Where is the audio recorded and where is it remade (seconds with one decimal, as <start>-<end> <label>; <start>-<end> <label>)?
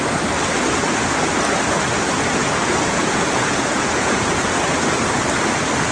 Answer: 0.0-2.4 recorded; 2.4-4.6 remade; 4.6-5.9 recorded